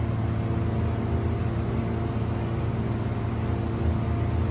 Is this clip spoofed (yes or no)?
no